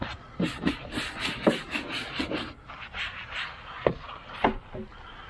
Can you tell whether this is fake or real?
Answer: real